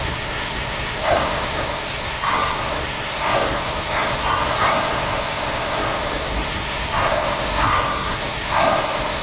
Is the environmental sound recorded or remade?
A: remade